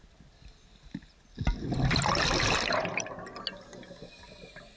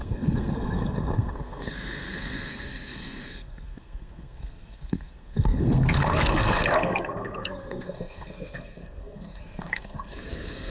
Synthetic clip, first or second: second